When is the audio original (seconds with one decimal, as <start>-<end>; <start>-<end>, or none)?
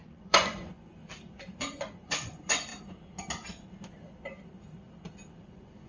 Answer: 1.0-1.5; 2.7-5.4